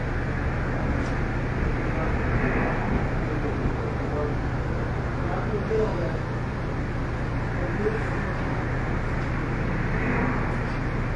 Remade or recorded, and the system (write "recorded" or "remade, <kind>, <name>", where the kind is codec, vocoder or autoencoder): recorded